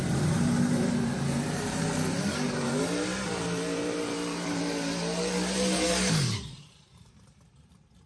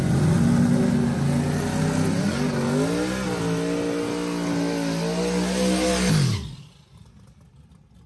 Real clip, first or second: second